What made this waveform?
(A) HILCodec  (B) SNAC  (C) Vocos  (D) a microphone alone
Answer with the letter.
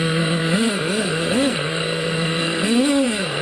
B